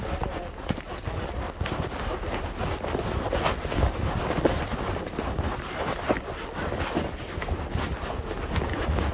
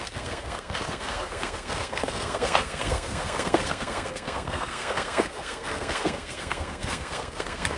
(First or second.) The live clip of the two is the first